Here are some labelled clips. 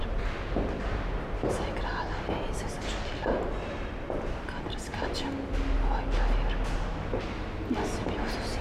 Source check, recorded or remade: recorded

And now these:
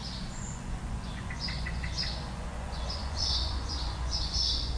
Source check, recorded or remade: remade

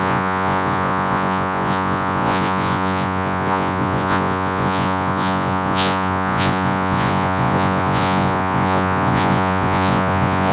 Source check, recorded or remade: remade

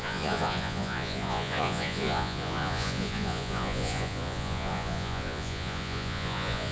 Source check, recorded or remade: remade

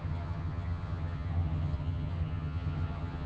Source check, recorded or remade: remade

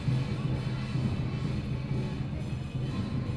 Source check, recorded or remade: recorded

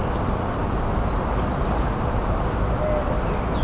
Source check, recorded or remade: recorded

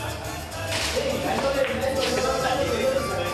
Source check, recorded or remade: recorded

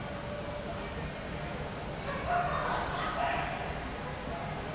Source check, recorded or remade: recorded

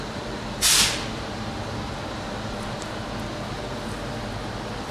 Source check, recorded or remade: recorded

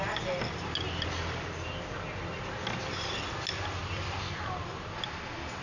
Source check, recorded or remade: recorded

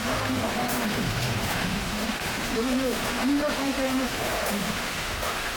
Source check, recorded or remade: remade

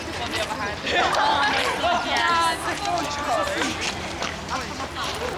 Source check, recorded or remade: recorded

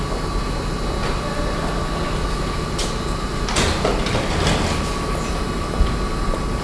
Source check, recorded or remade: recorded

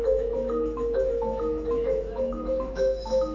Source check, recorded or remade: remade